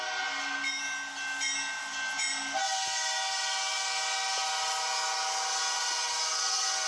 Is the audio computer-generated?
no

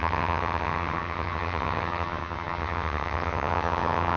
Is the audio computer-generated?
yes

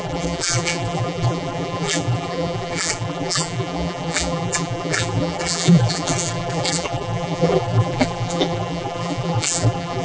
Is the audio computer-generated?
yes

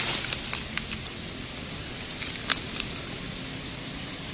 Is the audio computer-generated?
no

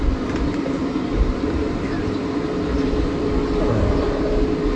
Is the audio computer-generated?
no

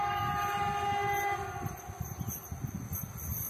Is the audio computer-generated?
no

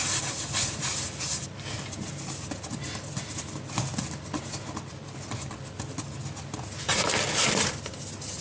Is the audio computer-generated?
no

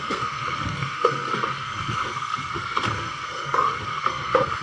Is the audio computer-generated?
yes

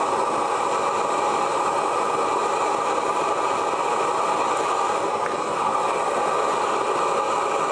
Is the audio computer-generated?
no